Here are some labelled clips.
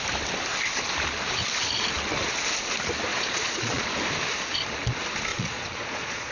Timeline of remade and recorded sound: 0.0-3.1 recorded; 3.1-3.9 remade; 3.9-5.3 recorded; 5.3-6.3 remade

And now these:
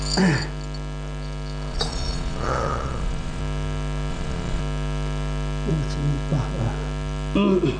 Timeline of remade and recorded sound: 0.0-1.7 recorded; 1.7-3.4 remade; 3.4-4.1 recorded; 4.1-4.6 remade; 4.6-7.8 recorded

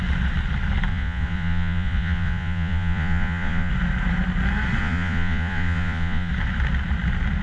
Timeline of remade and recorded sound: 0.0-0.9 recorded; 0.9-3.7 remade; 3.7-4.8 recorded; 4.8-6.3 remade; 6.3-7.4 recorded

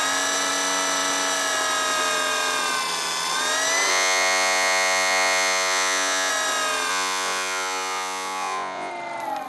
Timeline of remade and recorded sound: 0.0-3.9 recorded; 3.9-6.3 remade; 6.3-6.9 recorded; 6.9-8.9 remade; 8.9-9.5 recorded

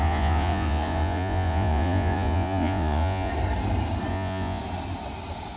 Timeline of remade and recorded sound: 0.0-3.3 remade; 3.3-4.1 recorded; 4.1-4.6 remade; 4.6-5.6 recorded

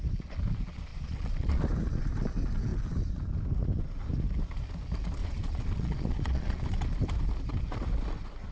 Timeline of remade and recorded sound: 0.0-0.9 recorded; 0.9-1.6 remade; 1.6-5.2 recorded; 5.2-6.6 remade; 6.6-8.5 recorded

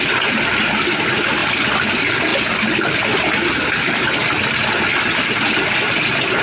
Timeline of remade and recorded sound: 0.0-6.4 recorded